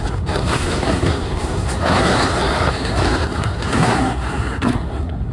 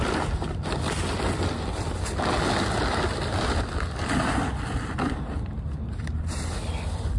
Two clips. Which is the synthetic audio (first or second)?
first